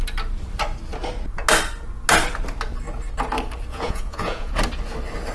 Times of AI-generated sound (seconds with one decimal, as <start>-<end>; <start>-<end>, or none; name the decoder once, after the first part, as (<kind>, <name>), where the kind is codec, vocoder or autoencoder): 3.7-4.5 (vocoder, Vocos)